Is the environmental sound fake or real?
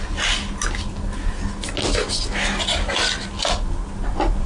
real